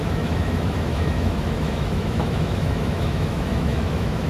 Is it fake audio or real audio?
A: fake